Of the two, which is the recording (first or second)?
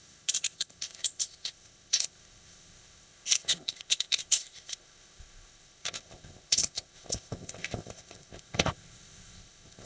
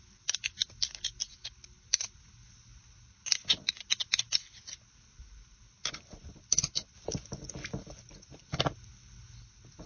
second